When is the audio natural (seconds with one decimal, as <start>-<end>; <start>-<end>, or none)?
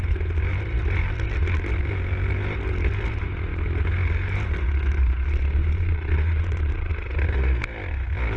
0.0-5.6; 6.9-8.4